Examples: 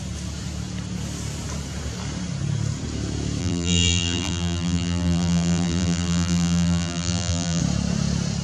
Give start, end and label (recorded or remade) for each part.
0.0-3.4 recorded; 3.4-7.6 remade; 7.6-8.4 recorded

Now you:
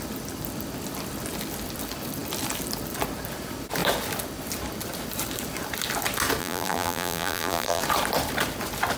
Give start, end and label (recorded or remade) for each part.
0.0-6.4 recorded; 6.4-7.8 remade; 7.8-9.0 recorded